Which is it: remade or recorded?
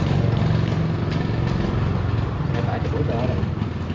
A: recorded